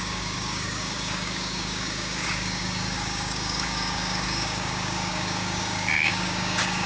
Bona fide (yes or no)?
no